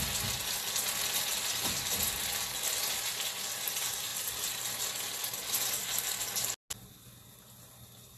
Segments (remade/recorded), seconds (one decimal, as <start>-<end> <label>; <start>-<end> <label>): 0.0-8.2 recorded